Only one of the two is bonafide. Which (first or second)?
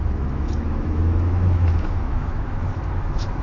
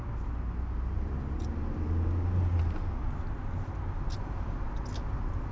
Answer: second